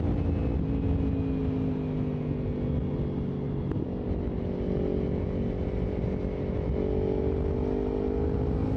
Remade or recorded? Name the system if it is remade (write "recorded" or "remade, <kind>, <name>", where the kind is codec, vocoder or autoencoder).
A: recorded